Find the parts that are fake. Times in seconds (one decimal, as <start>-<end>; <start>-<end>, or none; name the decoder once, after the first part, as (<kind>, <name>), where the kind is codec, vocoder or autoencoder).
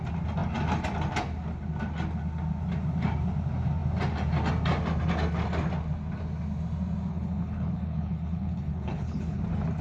7.1-9.4 (codec, HILCodec)